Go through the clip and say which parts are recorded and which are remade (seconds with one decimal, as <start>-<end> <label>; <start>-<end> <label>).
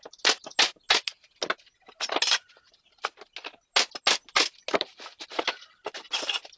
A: 0.0-6.6 recorded